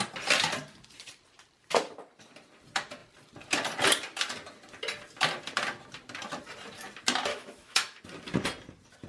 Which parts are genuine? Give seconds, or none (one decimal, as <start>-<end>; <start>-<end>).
0.0-7.3; 8.0-9.1